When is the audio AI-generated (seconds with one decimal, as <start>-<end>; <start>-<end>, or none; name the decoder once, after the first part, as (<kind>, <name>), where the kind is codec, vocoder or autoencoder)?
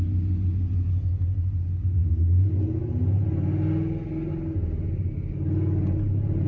none